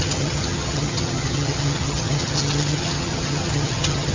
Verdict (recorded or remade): remade